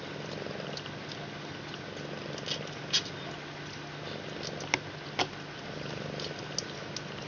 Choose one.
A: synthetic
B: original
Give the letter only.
B